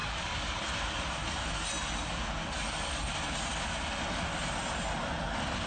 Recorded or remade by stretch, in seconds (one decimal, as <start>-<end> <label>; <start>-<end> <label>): 0.0-0.6 remade; 0.6-5.7 recorded